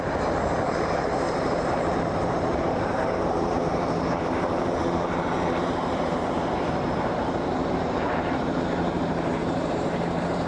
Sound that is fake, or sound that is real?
fake